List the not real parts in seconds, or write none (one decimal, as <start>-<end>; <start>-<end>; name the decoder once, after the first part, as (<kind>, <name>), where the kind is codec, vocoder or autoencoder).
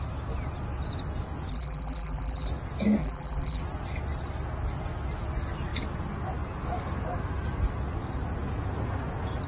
1.5-2.5 (vocoder, BigVGAN v2); 3.0-3.6